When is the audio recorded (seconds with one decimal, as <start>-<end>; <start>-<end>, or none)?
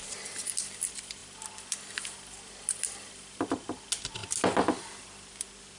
0.0-5.8